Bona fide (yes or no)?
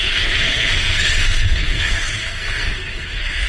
no